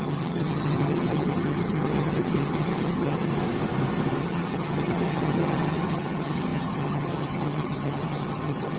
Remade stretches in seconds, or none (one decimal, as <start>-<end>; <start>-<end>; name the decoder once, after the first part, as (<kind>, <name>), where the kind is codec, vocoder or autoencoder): 0.0-3.3 (vocoder, HiFi-GAN); 4.2-8.8

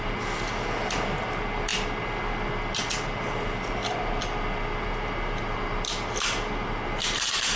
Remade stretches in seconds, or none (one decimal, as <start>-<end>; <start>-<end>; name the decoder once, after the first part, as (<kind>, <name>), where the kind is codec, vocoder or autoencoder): none

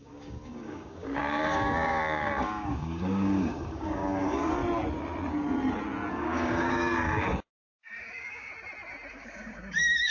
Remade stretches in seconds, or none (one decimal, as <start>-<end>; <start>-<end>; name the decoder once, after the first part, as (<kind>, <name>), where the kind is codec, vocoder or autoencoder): 0.0-4.6 (codec, DAC); 6.1-8.5; 9.1-10.1

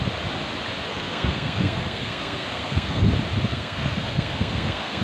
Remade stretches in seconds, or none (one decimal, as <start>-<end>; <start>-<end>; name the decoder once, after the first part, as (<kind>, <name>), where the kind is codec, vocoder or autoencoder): 0.9-3.1 (codec, SNAC); 3.5-5.0

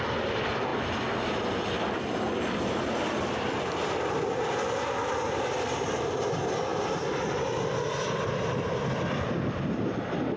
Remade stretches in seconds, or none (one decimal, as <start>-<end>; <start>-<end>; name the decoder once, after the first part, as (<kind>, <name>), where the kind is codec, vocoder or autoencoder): none

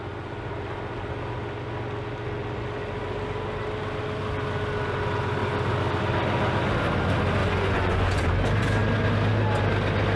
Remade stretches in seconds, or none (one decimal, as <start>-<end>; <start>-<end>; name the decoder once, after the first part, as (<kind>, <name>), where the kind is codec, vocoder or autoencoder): 7.4-8.2 (vocoder, Vocos)

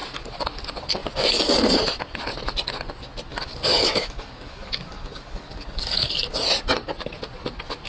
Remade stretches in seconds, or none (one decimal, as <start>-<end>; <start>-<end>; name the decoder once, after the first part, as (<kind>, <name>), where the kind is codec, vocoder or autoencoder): 3.3-6.2 (codec, DAC)